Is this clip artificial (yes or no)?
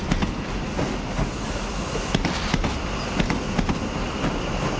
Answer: no